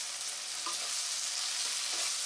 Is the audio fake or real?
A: real